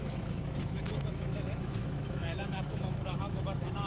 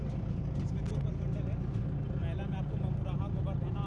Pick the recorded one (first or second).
second